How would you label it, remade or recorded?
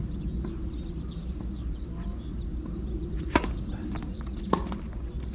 recorded